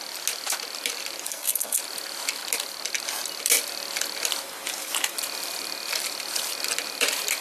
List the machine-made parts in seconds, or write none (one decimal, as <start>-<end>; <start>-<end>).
1.3-1.8